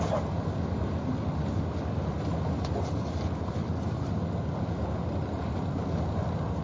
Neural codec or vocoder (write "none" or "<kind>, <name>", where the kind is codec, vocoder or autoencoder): none